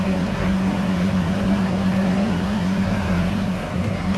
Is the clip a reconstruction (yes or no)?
yes